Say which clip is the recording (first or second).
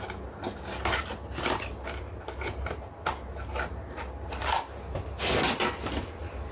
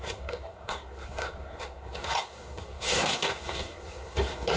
first